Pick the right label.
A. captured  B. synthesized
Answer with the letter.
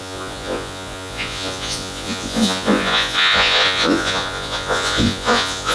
B